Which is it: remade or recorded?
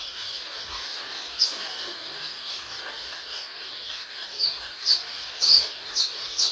remade